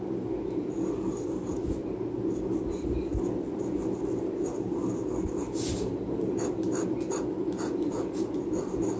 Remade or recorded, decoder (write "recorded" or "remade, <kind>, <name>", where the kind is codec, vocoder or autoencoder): recorded